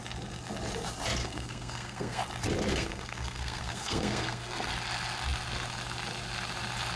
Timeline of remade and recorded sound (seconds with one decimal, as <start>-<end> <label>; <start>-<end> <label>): 0.0-1.2 recorded; 1.2-2.2 remade; 2.2-2.7 recorded; 2.7-4.7 remade; 4.7-7.0 recorded